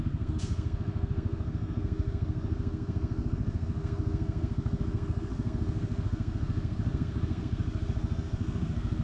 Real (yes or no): no